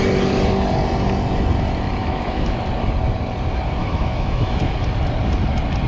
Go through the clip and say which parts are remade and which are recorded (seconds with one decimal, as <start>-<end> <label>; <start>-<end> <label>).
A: 0.0-2.0 recorded; 2.0-2.6 remade; 2.6-3.8 recorded; 3.8-4.6 remade; 4.6-5.9 recorded